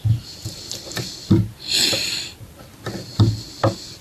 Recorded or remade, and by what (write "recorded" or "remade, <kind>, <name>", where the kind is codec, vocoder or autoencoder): recorded